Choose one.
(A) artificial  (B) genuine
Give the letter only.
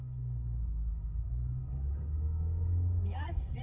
A